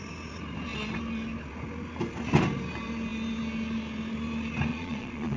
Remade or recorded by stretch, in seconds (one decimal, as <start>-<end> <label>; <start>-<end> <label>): 0.0-4.7 recorded; 4.7-5.4 remade